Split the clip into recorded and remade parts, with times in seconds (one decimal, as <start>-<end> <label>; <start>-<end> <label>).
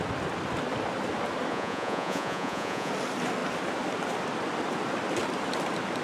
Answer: 0.0-1.5 recorded; 1.5-2.9 remade; 2.9-6.0 recorded